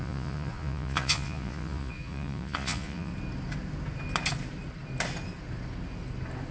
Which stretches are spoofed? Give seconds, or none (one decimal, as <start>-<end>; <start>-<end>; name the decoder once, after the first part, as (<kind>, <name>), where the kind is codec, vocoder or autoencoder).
0.0-3.1 (vocoder, Vocos)